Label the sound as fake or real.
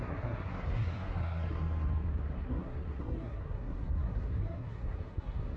fake